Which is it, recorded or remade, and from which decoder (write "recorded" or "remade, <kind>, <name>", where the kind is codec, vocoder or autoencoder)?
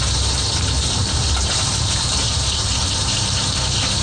remade, vocoder, BigVGAN v2